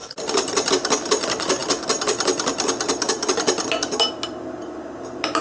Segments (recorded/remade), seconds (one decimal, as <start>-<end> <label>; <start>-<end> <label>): 0.0-5.4 recorded

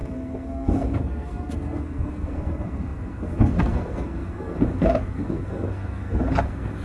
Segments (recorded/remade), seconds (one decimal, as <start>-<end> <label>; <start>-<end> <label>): 0.0-6.8 remade

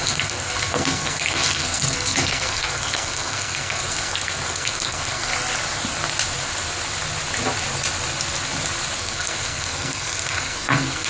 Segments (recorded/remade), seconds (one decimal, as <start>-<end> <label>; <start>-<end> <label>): 0.0-5.3 remade; 5.3-9.0 recorded; 9.0-11.1 remade